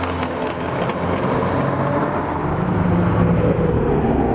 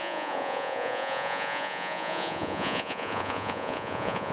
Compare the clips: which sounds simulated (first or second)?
second